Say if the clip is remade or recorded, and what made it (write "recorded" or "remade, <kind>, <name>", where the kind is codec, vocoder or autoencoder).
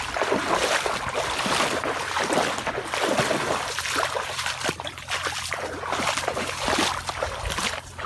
recorded